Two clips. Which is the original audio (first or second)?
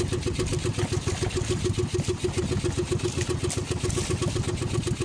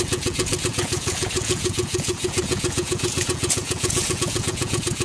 first